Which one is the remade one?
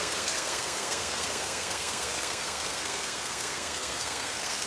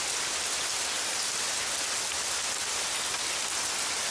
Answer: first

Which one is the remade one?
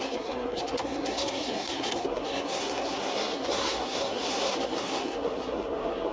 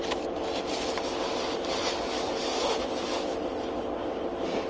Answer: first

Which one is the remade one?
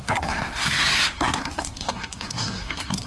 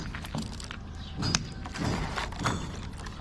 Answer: first